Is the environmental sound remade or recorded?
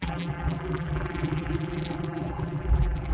remade